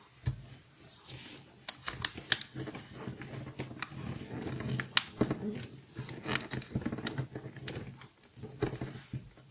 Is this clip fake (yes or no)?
no